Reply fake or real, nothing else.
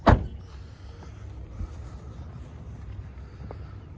real